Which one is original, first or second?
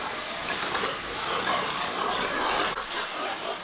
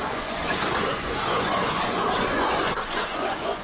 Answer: first